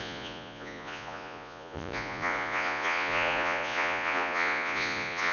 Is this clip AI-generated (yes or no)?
yes